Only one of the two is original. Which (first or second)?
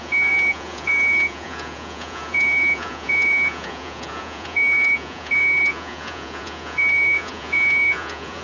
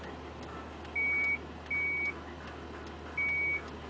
second